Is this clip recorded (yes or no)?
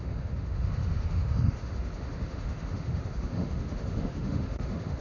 no